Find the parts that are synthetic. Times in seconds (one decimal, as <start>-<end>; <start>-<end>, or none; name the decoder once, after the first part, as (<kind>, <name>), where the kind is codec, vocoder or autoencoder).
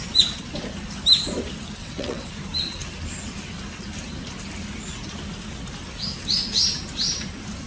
1.8-2.3 (vocoder, WaveNeXt)